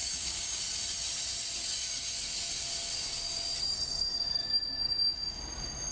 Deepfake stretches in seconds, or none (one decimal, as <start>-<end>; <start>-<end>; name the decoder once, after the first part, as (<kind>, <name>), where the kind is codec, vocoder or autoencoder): 0.0-0.6 (codec, DAC); 4.4-5.4